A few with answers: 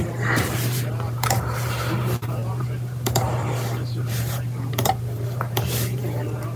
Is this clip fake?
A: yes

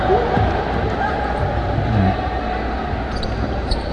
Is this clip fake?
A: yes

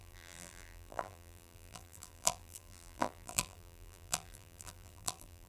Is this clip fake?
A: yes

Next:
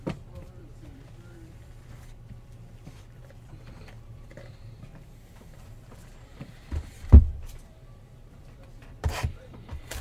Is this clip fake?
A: yes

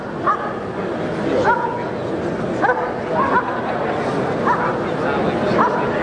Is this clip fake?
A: no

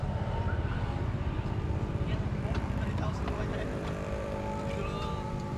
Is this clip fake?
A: yes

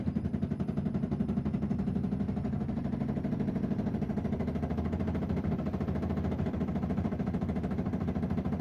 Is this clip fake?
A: yes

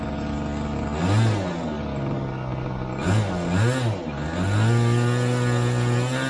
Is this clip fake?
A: no